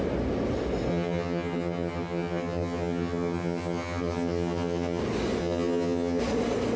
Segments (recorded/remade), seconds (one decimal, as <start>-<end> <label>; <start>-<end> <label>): 0.0-0.9 recorded; 0.9-5.0 remade; 5.0-5.4 recorded; 5.4-6.2 remade; 6.2-6.8 recorded